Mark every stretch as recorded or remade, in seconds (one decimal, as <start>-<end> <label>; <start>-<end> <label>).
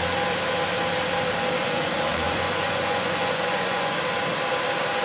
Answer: 0.0-1.6 recorded; 1.6-4.0 remade; 4.0-5.0 recorded